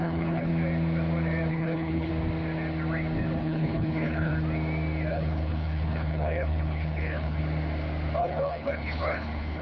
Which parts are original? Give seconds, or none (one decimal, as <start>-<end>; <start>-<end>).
0.5-1.5; 2.1-3.4; 4.3-5.1; 7.4-8.2